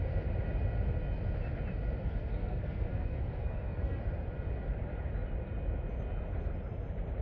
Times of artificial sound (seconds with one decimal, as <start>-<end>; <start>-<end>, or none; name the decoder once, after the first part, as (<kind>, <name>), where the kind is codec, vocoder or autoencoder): 2.0-4.0 (codec, SNAC)